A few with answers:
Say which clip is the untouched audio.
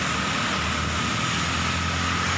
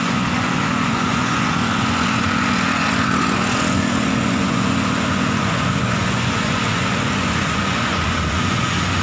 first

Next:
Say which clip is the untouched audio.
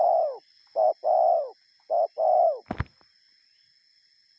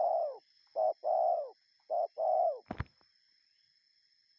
first